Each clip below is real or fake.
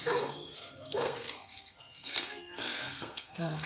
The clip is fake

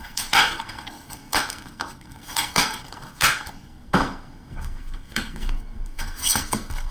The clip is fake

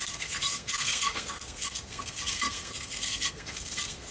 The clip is fake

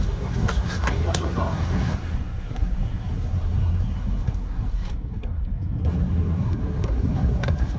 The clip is fake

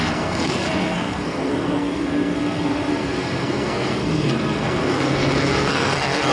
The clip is fake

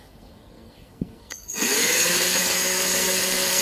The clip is fake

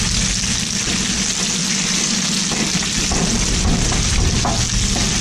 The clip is real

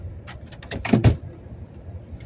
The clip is real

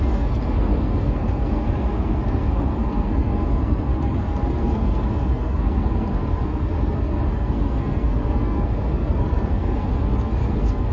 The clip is fake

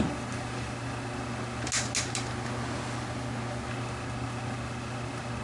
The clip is real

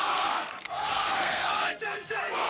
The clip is fake